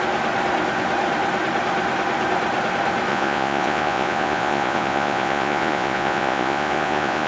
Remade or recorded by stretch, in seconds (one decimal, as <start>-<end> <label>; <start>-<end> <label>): 0.0-3.1 recorded; 3.1-7.3 remade